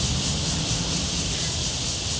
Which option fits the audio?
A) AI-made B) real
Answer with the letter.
A